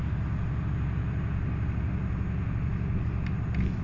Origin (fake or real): real